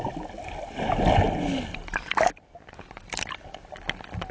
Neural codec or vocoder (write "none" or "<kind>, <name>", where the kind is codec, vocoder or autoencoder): none